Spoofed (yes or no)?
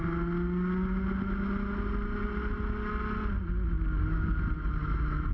no